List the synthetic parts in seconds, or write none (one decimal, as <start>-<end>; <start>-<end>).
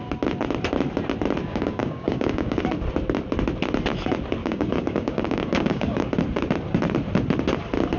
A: 1.4-2.6; 4.4-6.1